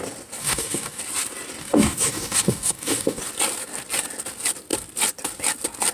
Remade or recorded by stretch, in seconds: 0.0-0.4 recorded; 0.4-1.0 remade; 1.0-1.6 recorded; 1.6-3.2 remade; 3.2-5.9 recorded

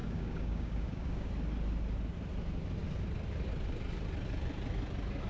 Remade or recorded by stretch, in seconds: 0.0-1.3 remade; 1.3-5.3 recorded

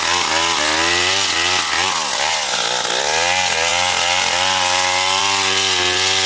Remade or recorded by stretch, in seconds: 0.0-6.3 recorded

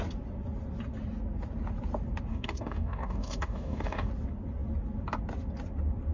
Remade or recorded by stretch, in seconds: 0.0-2.3 recorded; 2.3-4.1 remade; 4.1-6.1 recorded